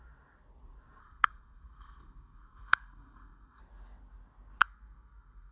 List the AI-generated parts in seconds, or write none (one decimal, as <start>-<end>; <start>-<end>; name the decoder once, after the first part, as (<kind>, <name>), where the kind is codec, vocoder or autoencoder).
1.0-3.6 (codec, SNAC); 4.6-5.5

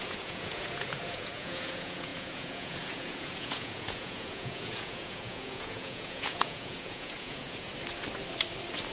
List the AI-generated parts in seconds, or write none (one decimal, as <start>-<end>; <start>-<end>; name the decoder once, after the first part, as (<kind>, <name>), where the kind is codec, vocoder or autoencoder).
0.0-7.7 (vocoder, Vocos)

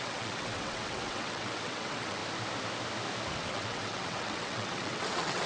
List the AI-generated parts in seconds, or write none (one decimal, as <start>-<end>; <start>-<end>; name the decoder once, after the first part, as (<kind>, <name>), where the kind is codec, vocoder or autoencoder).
0.0-2.2 (vocoder, WaveNeXt); 3.3-5.5

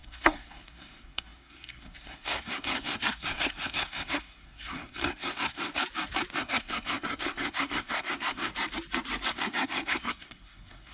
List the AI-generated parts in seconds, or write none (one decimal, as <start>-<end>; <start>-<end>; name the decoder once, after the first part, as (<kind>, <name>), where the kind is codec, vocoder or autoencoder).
0.0-5.7 (codec, SNAC); 6.4-8.5; 9.3-10.9